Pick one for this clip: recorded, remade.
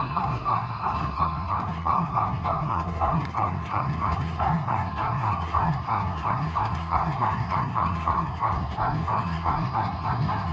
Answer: remade